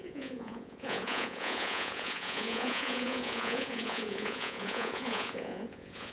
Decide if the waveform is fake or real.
fake